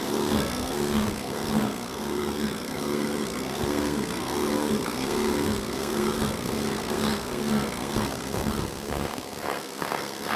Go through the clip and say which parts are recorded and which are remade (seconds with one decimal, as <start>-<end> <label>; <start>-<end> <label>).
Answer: 0.0-10.4 remade